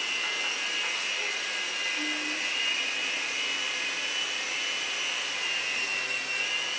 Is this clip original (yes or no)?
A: yes